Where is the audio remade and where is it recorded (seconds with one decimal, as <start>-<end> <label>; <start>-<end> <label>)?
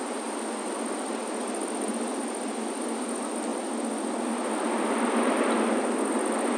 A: 0.0-6.6 recorded